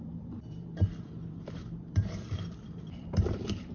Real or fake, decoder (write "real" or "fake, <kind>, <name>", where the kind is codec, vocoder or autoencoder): fake, vocoder, BigVGAN v2